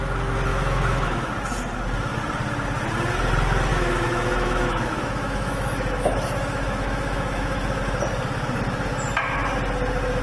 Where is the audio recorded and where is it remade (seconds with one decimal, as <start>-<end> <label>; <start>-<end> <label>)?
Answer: 0.0-0.5 recorded; 0.5-1.3 remade; 1.3-3.7 recorded; 3.7-7.8 remade; 7.8-10.2 recorded